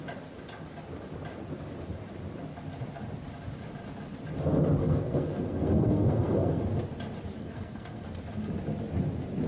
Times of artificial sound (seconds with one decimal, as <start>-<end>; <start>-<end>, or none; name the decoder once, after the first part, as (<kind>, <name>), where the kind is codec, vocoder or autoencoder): 4.8-6.6 (codec, SNAC); 7.4-8.2